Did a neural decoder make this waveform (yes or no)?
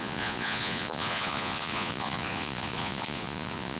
yes